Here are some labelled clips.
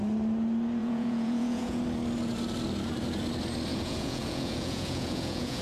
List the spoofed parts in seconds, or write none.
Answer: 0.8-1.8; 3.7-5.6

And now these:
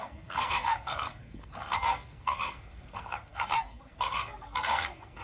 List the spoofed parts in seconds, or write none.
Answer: 0.0-5.2

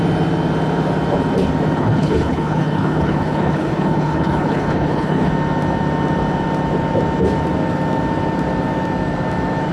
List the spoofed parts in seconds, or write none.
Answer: 1.8-5.3

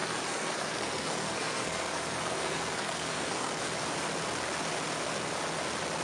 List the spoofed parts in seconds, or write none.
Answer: 0.0-3.6